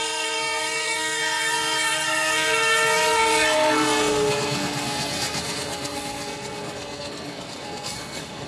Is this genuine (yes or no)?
no